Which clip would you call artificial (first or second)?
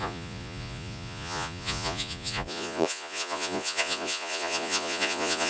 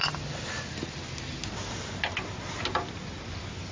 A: first